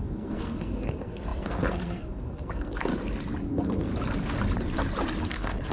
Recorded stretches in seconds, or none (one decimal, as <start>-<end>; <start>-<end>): 2.9-3.5; 3.9-5.2